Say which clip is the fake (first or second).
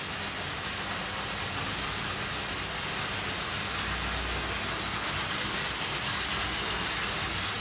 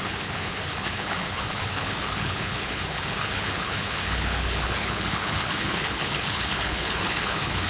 second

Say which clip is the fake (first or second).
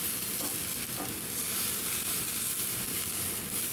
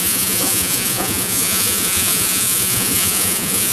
second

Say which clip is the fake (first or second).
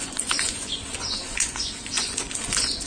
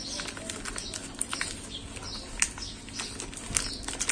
first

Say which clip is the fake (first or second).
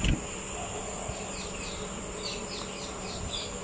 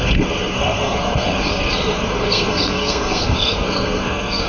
second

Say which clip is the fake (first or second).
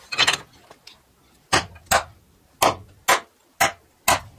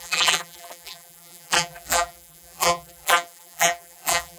second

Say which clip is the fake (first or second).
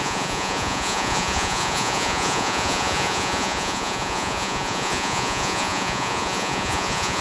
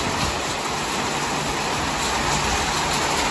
first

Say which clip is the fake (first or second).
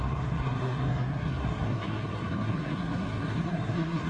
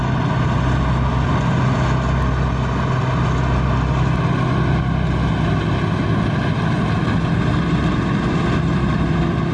first